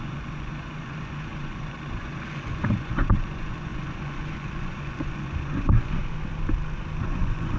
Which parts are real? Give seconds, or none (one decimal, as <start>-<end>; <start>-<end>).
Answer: 6.0-7.0